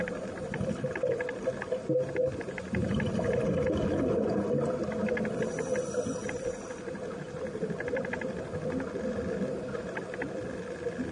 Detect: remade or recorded recorded